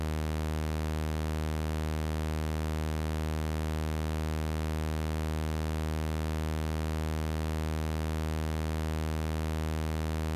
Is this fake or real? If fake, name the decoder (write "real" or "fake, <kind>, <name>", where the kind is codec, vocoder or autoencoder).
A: real